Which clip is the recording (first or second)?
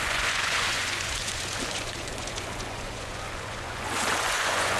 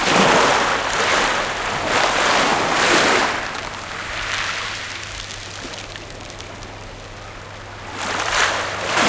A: second